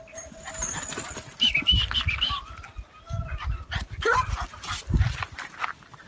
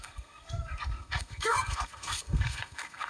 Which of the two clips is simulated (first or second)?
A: second